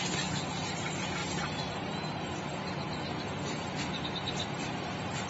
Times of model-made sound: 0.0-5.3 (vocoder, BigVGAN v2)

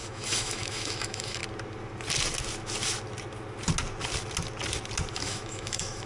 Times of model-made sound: 0.0-1.4 (autoencoder, DAC-VAE); 5.1-6.1

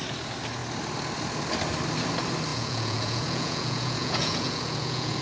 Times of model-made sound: 2.5-5.2 (vocoder, Vocos)